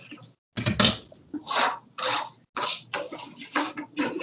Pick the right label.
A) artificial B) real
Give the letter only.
B